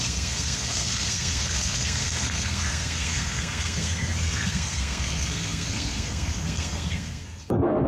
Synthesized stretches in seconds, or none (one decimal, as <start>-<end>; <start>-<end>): 0.0-7.9